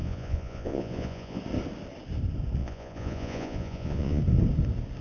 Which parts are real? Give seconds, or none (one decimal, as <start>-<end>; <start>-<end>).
1.4-2.6; 4.2-5.0